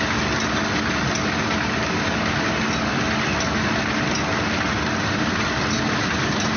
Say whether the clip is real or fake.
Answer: real